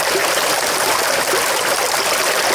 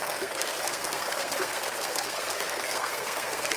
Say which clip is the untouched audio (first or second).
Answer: first